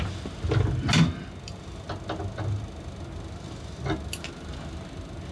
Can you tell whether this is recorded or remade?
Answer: recorded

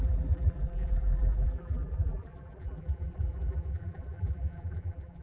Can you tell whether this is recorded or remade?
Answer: remade